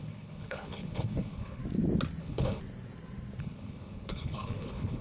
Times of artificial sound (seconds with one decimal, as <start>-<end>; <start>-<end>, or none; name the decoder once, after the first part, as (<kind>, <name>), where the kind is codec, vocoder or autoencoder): 0.0-1.6 (codec, HILCodec); 2.2-2.6; 3.4-5.0